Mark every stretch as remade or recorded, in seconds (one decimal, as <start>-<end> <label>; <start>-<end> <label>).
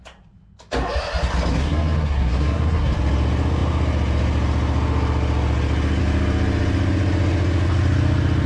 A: 0.0-1.5 recorded; 1.5-2.9 remade; 2.9-8.5 recorded